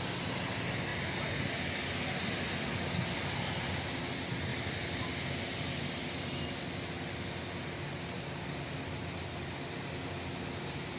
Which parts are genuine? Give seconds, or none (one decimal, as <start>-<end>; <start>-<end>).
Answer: 0.0-11.0